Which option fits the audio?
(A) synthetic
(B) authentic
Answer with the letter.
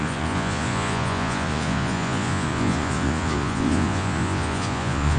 A